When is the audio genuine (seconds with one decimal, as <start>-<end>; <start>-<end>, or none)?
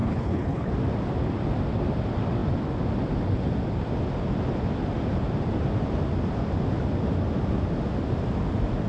0.7-8.9